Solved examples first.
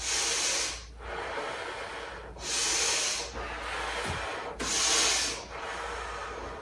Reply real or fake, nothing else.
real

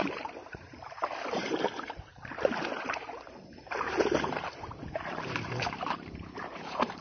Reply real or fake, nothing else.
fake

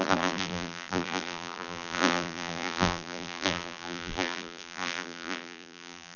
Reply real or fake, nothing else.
fake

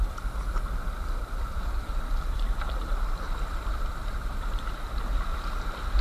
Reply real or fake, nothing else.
fake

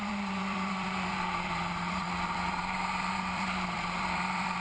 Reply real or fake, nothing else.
fake